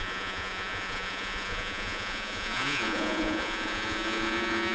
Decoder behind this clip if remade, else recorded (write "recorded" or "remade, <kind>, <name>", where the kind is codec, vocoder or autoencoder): remade, vocoder, Vocos